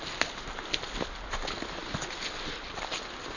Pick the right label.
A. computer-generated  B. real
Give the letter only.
B